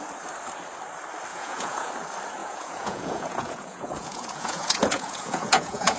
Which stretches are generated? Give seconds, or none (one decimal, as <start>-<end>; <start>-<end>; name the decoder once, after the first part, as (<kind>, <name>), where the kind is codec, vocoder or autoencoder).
1.3-1.9 (vocoder, Vocos); 2.4-6.0